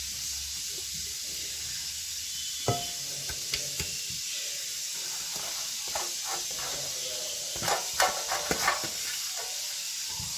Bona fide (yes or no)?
yes